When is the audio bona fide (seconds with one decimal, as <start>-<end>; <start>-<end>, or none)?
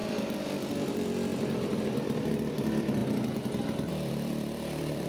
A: 3.0-3.9